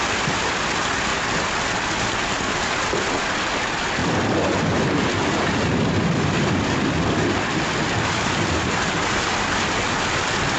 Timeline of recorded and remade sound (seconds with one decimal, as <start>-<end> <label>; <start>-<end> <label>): 0.0-10.6 recorded